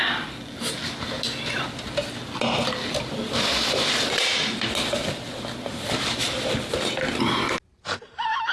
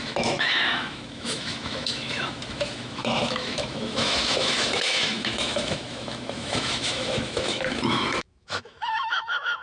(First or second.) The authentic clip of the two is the first